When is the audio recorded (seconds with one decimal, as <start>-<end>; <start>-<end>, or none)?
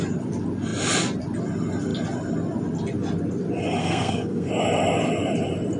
0.0-3.8; 4.5-5.8